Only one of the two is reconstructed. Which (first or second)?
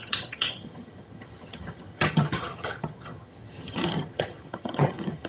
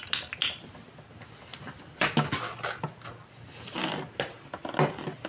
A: first